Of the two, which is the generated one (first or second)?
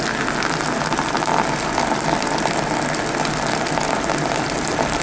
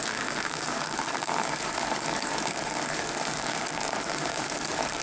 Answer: second